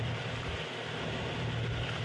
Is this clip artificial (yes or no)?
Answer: yes